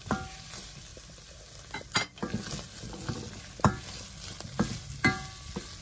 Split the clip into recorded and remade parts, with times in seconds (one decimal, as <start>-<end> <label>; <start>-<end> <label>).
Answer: 0.0-5.8 recorded